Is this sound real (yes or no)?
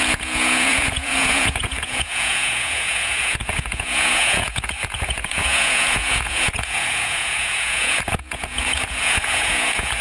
no